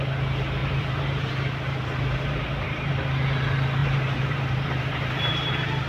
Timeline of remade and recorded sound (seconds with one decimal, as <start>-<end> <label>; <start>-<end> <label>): 0.0-0.6 recorded; 0.6-2.9 remade; 2.9-3.8 recorded; 3.8-5.5 remade; 5.5-5.9 recorded